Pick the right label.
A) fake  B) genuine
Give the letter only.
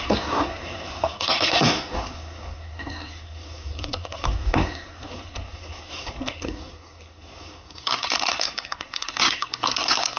A